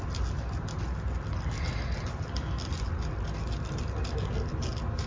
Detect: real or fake real